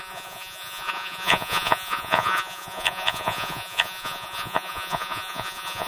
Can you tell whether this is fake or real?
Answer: fake